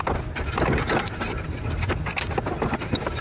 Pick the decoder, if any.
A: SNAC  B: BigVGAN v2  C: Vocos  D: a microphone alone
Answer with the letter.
D